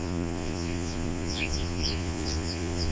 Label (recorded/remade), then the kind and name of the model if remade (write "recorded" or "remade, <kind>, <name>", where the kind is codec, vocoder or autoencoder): remade, vocoder, Vocos